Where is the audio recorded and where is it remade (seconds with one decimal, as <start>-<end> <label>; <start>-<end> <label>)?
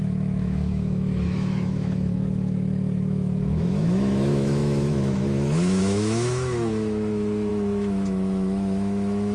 0.0-9.3 remade